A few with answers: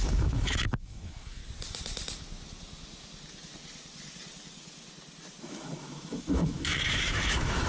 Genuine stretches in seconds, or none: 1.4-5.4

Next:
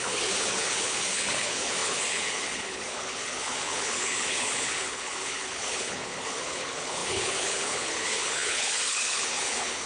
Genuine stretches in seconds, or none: none

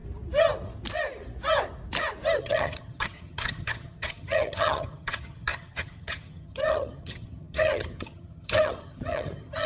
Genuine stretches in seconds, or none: 0.0-2.4

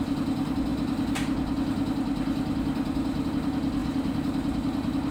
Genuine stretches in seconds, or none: 0.0-3.8

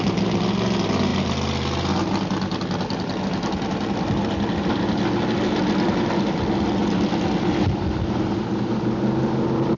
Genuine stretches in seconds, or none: 0.0-9.8

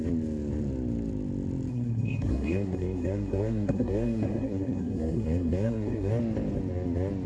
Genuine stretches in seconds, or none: 0.0-1.7; 6.1-7.3

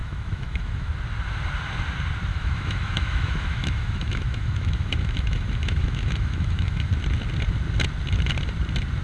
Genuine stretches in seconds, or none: 0.9-2.3; 6.9-9.0

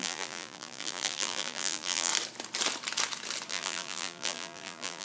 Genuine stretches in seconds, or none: 2.1-3.5